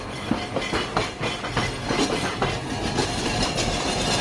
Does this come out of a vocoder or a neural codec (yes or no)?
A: no